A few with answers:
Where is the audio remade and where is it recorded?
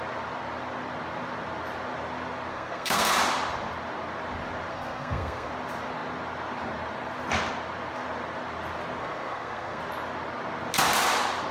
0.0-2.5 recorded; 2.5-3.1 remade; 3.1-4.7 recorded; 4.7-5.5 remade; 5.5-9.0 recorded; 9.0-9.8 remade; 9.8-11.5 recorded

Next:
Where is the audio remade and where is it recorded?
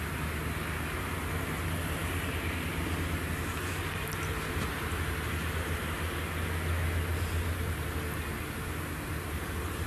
0.0-9.9 recorded